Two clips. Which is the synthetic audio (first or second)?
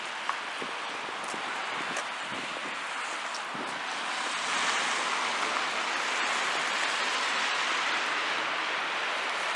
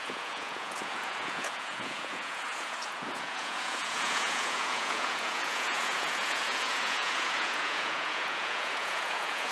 second